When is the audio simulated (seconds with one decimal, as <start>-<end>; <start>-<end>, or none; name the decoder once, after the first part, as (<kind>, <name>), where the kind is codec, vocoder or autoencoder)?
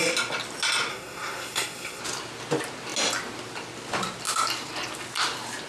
0.9-2.0 (codec, SNAC)